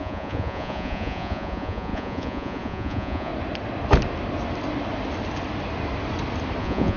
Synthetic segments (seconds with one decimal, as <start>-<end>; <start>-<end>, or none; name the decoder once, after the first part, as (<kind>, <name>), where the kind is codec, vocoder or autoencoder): 0.0-3.3 (vocoder, Vocos); 6.6-7.0